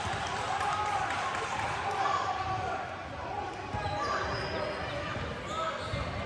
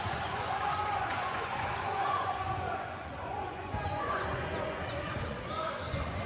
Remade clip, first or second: second